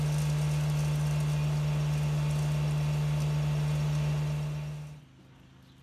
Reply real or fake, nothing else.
real